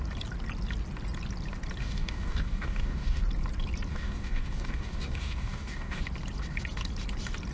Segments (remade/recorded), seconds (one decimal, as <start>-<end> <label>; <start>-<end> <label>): 0.0-1.8 recorded; 1.8-3.2 remade; 3.2-3.9 recorded; 3.9-6.0 remade; 6.0-7.5 recorded